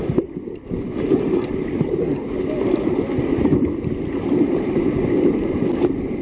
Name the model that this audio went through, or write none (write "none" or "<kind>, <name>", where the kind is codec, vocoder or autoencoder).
none